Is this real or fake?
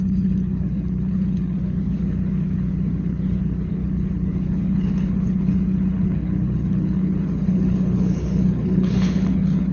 fake